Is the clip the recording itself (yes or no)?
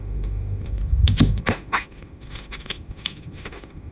no